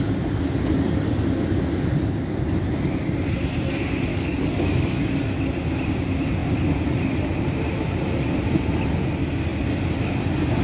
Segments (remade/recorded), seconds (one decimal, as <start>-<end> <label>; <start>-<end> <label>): 0.0-4.1 recorded; 4.1-5.4 remade; 5.4-10.6 recorded